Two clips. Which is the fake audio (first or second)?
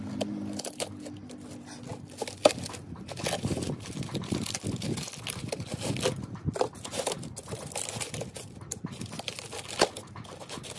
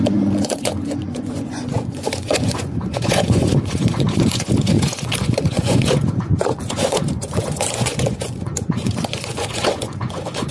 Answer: second